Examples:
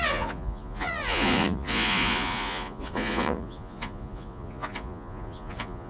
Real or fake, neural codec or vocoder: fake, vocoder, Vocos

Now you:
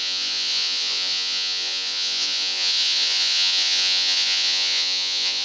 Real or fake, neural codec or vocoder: fake, vocoder, Vocos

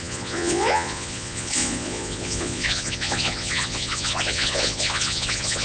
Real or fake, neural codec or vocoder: fake, vocoder, Vocos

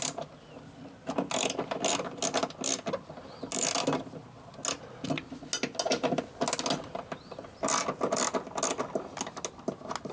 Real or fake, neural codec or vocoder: real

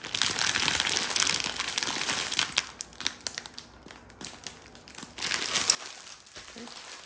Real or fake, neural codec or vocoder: real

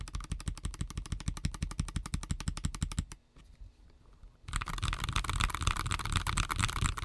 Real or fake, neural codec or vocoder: real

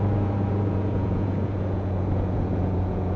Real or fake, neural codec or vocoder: fake, vocoder, Vocos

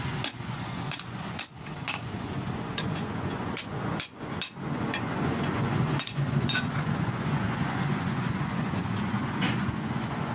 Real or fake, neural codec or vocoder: fake, vocoder, Vocos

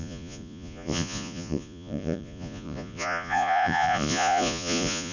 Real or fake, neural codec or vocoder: fake, vocoder, Vocos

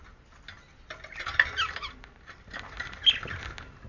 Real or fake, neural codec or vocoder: real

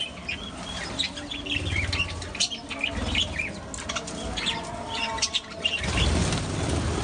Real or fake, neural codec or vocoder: real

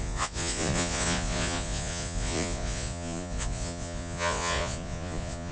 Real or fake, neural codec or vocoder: fake, vocoder, Vocos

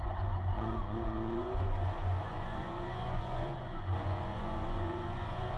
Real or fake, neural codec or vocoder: fake, vocoder, Vocos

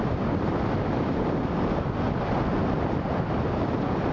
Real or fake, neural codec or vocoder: real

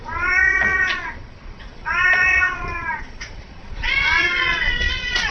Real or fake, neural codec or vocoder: fake, vocoder, Vocos